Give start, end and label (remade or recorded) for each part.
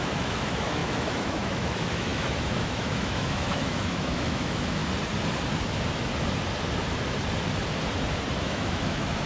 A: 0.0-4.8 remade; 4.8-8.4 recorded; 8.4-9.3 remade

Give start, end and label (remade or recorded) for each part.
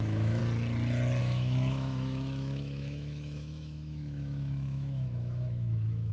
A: 0.0-0.4 remade; 0.4-1.2 recorded; 1.2-6.1 remade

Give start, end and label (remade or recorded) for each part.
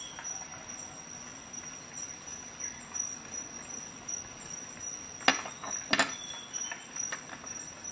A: 0.0-7.9 recorded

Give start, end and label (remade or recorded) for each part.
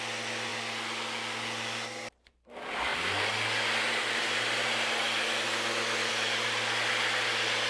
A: 0.0-7.7 recorded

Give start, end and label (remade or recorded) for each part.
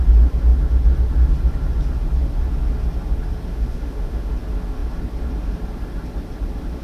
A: 0.0-3.5 recorded; 3.5-4.3 remade; 4.3-6.8 recorded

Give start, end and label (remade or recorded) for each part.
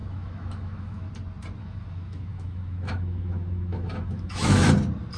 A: 0.0-1.1 remade; 1.1-1.6 recorded; 1.6-4.7 remade; 4.7-5.2 recorded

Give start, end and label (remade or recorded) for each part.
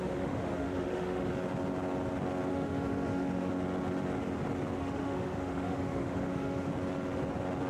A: 0.0-1.3 remade; 1.3-2.5 recorded; 2.5-3.5 remade; 3.5-4.8 recorded; 4.8-6.7 remade; 6.7-7.7 recorded